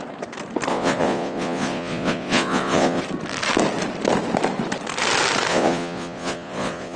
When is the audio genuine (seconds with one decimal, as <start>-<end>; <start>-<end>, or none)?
0.0-0.7; 3.0-5.5

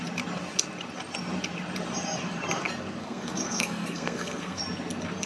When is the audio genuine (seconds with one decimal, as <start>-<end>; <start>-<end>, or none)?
0.0-3.0; 4.6-5.3